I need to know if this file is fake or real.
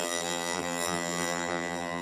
fake